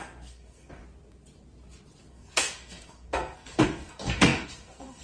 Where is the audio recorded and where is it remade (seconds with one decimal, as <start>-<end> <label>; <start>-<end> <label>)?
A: 0.0-0.8 remade; 0.8-2.1 recorded; 2.1-5.0 remade